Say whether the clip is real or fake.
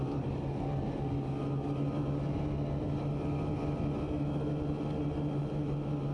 real